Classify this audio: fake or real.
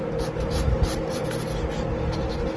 real